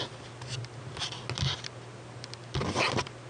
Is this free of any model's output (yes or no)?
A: yes